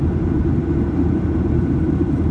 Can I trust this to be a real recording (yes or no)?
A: no